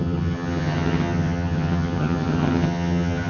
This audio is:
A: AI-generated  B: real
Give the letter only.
A